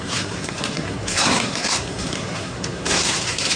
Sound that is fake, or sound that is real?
fake